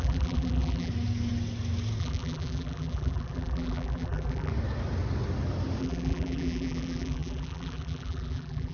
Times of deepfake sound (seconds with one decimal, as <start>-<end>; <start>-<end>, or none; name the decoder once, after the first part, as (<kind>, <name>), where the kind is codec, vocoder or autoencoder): 0.0-0.9 (vocoder, BigVGAN v2); 2.0-4.5; 5.8-8.7